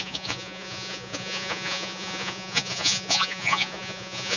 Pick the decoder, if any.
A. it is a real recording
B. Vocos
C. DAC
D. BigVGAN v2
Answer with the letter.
B